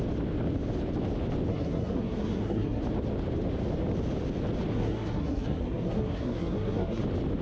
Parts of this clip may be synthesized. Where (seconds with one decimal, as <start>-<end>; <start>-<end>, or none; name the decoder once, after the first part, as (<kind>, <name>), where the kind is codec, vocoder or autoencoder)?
1.5-2.8 (codec, SNAC); 4.7-7.0